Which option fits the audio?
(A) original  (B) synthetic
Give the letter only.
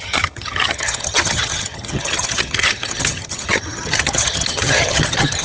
B